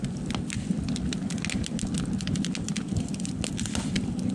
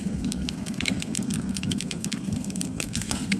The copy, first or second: second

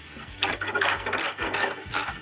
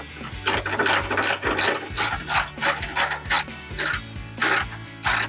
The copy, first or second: first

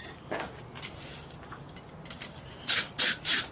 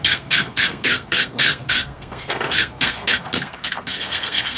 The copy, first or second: second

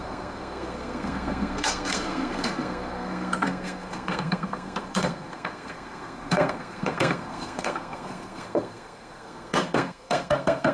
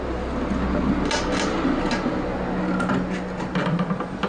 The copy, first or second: first